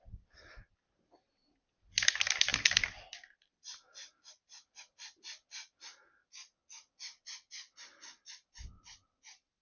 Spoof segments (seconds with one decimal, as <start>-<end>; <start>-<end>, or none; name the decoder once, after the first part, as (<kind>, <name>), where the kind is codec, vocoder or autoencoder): 2.5-4.8 (vocoder, BigVGAN v2); 6.6-9.1